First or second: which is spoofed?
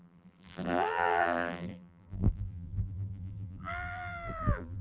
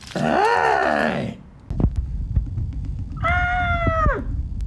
first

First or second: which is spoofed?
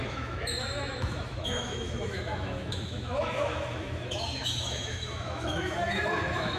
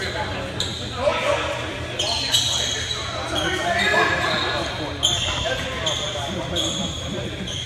first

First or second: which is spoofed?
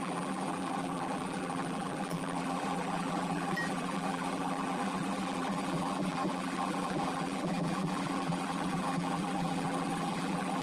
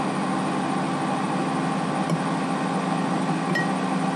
first